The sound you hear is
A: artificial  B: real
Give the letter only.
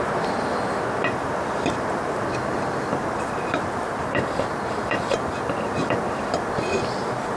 A